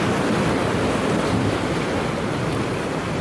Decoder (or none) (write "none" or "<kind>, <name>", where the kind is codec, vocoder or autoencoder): none